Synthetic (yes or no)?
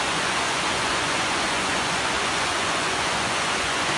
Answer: yes